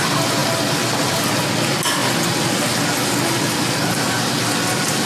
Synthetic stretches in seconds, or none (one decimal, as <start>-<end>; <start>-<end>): none

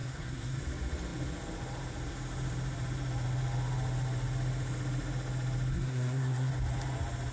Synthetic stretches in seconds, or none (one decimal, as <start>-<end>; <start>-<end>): 0.0-0.6; 5.7-6.5

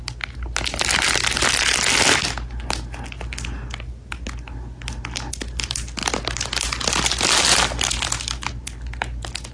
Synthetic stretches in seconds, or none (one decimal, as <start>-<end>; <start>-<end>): none

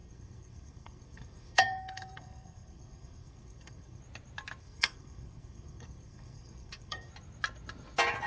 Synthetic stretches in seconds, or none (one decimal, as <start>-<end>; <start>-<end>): 0.0-4.0; 4.6-7.1

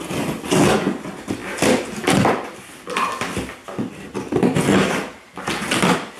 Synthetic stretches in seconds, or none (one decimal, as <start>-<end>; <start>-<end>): none